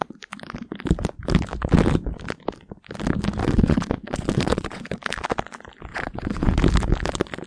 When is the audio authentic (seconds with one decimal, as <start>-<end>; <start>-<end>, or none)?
0.0-3.4; 5.0-5.9; 6.6-7.5